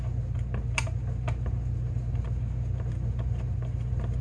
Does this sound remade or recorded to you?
recorded